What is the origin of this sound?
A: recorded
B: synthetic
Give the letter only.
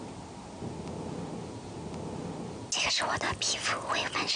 A